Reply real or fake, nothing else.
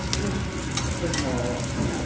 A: real